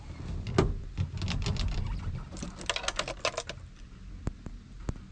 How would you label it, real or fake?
real